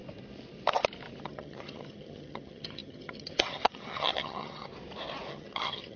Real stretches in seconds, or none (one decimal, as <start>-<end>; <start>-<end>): 0.0-1.2; 4.7-5.3